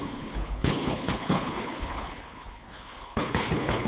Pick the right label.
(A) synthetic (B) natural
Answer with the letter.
A